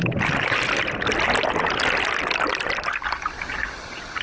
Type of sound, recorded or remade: recorded